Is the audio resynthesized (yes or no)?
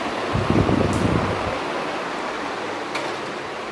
no